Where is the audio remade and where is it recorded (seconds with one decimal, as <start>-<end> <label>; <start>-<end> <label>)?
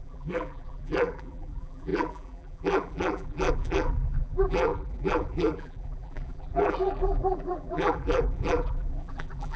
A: 0.0-9.6 remade